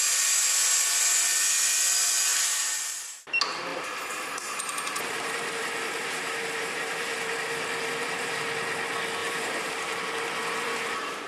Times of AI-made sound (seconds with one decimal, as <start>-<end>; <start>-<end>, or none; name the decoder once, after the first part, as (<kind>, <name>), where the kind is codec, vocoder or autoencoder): 2.3-3.0 (vocoder, BigVGAN v2); 3.7-8.3; 9.2-10.0; 10.4-11.3